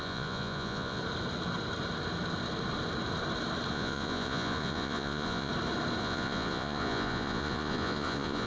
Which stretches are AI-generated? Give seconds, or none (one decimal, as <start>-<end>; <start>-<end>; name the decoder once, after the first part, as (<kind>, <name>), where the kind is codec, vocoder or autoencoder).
0.0-1.0 (vocoder, Vocos); 3.7-5.5; 6.0-8.5